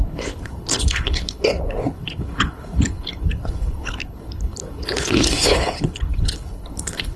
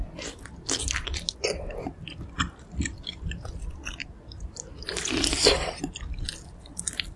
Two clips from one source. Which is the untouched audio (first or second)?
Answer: second